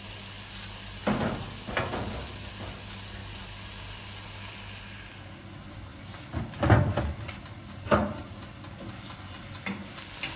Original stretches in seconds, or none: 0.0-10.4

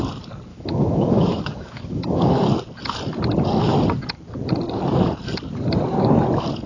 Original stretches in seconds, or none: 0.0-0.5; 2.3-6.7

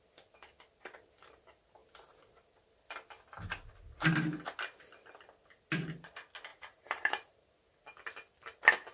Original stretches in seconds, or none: 0.0-6.5; 7.5-8.9

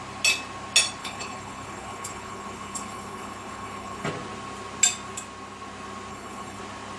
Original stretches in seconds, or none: 0.0-1.0; 4.1-6.1; 6.6-7.0

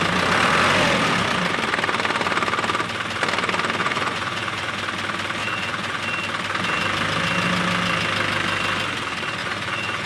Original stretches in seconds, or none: 0.0-3.8; 4.8-5.4; 6.0-9.4